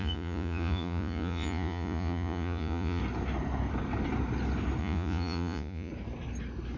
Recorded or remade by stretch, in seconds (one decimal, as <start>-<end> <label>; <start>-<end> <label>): 0.0-3.0 remade; 3.0-4.8 recorded; 4.8-5.9 remade; 5.9-6.8 recorded